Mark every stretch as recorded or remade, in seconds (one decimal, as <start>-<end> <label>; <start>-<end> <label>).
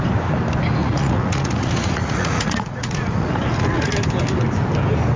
0.0-0.8 recorded; 0.8-3.9 remade; 3.9-5.2 recorded